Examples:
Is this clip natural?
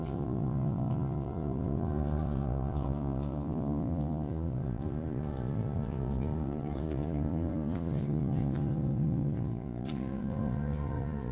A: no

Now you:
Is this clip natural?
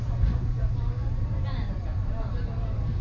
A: no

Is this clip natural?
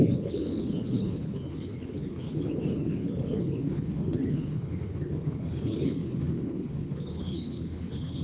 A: no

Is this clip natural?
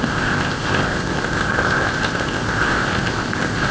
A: no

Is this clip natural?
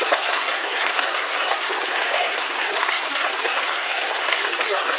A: no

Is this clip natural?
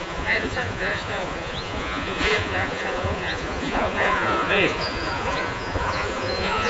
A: no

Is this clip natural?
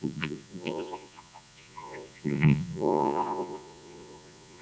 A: no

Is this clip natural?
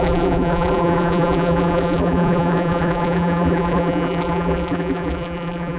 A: no